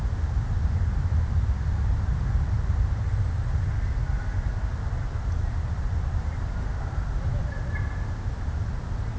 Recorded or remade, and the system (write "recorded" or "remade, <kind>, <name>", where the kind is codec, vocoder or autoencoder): recorded